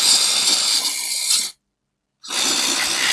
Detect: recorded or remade recorded